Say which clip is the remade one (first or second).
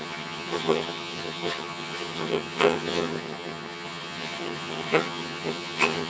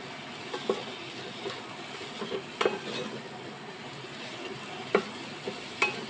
first